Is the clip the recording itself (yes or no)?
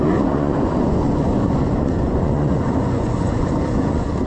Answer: no